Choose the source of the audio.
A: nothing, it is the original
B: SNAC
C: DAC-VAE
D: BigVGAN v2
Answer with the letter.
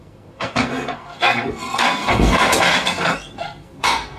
B